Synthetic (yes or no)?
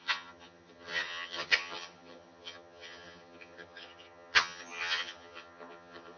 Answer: yes